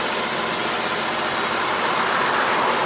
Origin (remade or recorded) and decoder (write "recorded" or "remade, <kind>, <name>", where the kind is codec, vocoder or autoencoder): recorded